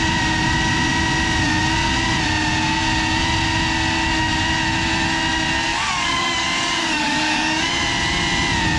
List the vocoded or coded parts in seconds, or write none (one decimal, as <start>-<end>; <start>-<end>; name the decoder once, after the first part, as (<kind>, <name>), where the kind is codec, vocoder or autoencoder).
5.7-7.7 (codec, DAC)